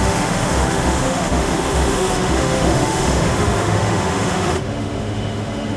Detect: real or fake fake